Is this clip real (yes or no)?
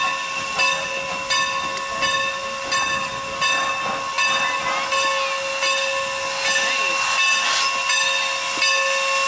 yes